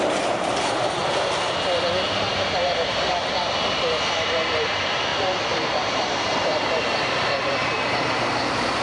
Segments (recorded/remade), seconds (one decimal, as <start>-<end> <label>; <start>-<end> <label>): 0.0-1.0 remade; 1.0-2.2 recorded; 2.2-8.8 remade